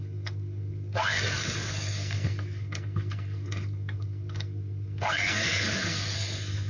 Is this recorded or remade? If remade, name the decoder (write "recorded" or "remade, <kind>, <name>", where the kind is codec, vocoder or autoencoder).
remade, codec, SNAC